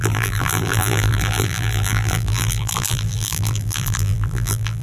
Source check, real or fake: fake